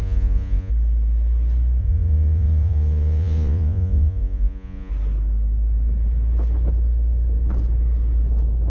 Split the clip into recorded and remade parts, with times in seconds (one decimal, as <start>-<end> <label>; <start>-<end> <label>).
0.0-0.7 remade; 0.7-1.8 recorded; 1.8-4.9 remade; 4.9-8.7 recorded